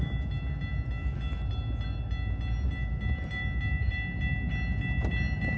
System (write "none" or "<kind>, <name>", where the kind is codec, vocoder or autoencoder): none